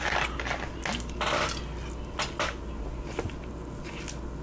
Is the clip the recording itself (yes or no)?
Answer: yes